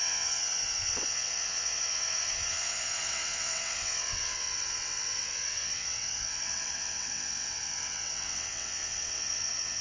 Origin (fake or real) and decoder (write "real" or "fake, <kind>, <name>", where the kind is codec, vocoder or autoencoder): fake, vocoder, WaveNeXt